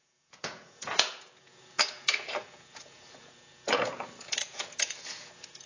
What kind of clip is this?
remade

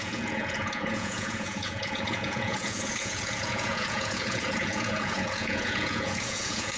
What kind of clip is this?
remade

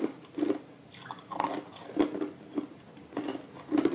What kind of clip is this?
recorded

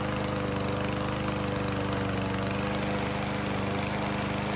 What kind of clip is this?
recorded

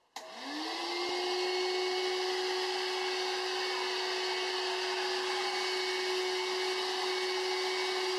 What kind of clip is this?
recorded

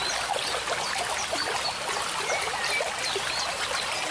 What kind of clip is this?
recorded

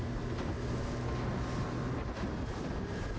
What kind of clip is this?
recorded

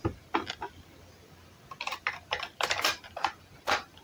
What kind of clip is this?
recorded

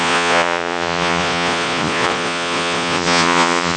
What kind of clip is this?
remade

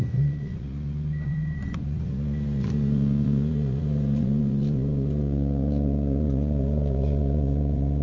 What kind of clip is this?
remade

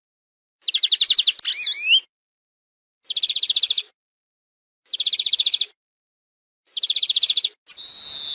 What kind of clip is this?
recorded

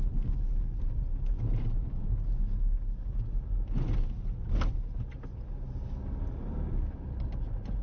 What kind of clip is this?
recorded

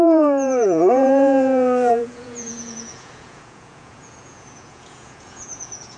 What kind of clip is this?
remade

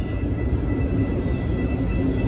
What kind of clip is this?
recorded